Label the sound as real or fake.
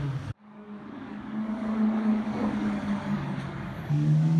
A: fake